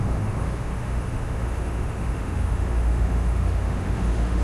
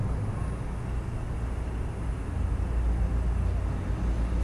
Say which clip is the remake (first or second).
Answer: first